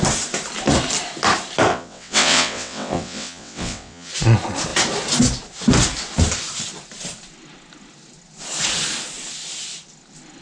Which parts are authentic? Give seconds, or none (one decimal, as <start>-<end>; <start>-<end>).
0.0-1.7; 4.1-10.4